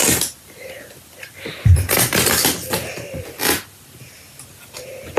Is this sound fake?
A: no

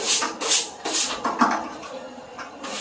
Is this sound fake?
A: no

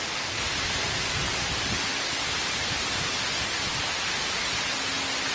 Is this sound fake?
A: no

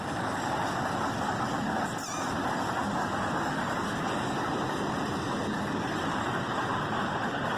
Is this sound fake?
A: no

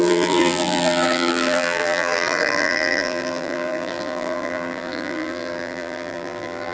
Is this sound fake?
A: yes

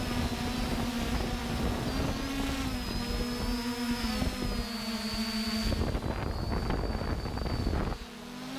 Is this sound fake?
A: no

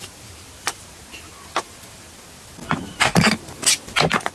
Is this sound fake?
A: yes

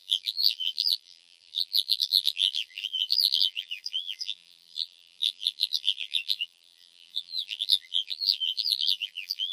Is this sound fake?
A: yes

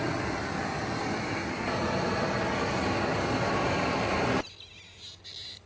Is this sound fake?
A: no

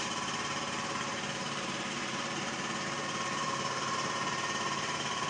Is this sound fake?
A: yes